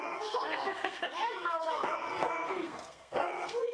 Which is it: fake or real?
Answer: fake